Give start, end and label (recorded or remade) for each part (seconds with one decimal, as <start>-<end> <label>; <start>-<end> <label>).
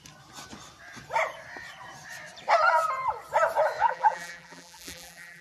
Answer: 0.0-3.8 recorded; 3.8-5.4 remade